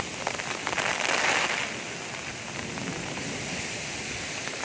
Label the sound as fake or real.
real